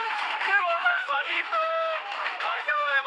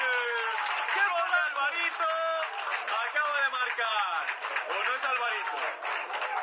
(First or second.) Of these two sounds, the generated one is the first